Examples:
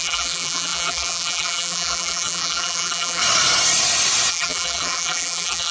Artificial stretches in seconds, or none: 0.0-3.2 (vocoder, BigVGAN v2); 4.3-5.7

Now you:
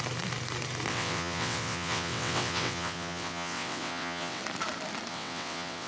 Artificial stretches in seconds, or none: 0.9-4.4 (vocoder, WaveNeXt); 5.1-5.9

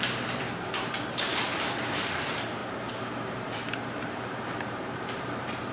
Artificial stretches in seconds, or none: 0.0-5.7 (vocoder, BigVGAN v2)

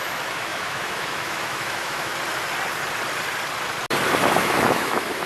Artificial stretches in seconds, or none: 0.0-2.1 (autoencoder, DAC-VAE); 4.4-5.3

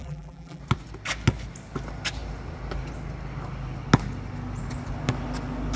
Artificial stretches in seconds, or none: 0.0-0.6 (vocoder, BigVGAN v2)

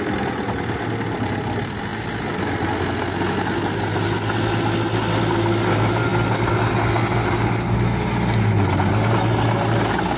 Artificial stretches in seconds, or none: none

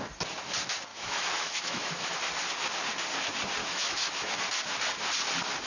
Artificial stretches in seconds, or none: 0.9-2.1 (autoencoder, DAC-VAE); 3.6-4.3